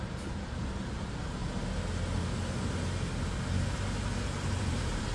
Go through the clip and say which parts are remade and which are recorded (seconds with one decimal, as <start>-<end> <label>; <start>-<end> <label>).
0.0-1.4 remade; 1.4-4.2 recorded; 4.2-5.1 remade